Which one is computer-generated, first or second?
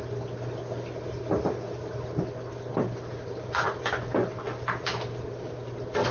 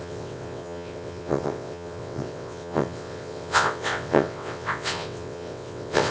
second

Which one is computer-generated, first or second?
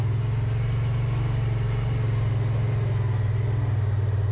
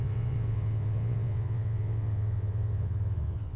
second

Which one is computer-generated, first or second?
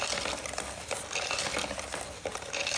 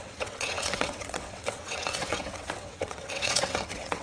second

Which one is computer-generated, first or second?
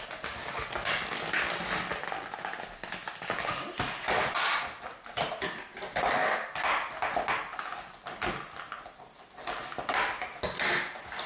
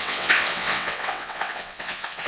second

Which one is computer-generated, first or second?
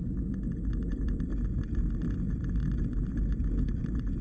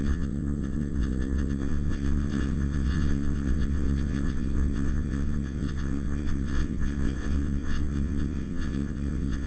second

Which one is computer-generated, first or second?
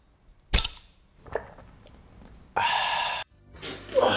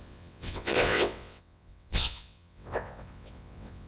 second